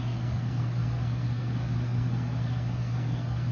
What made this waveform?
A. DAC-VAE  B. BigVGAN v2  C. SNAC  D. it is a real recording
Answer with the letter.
C